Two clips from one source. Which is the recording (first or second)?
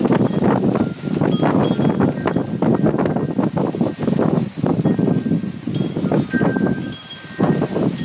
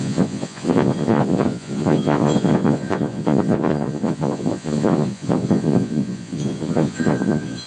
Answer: first